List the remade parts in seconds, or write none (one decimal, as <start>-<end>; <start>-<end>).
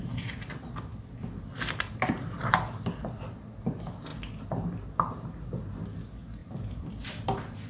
0.9-1.9; 6.4-7.7